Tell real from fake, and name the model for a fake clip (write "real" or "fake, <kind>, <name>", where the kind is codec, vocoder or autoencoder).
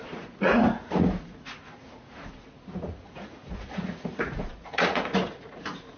fake, vocoder, Vocos